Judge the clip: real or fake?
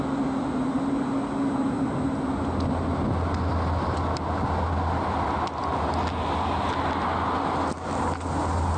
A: real